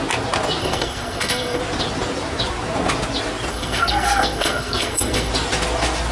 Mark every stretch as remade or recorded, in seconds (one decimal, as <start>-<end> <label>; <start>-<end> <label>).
0.0-0.6 recorded; 0.6-1.6 remade; 1.6-3.5 recorded; 3.5-5.3 remade; 5.3-6.1 recorded